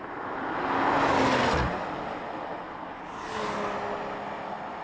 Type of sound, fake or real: real